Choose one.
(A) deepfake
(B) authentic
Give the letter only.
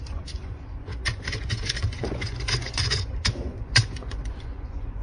A